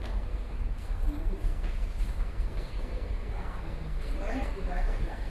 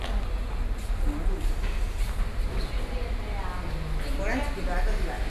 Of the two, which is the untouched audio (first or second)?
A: second